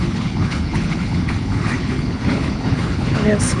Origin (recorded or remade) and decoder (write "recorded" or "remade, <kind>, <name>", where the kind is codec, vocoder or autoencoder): remade, codec, HILCodec